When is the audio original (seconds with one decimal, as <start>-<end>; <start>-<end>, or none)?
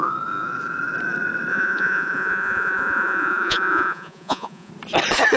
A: 0.0-1.5; 4.7-5.4